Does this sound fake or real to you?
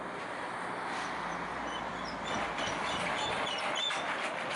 real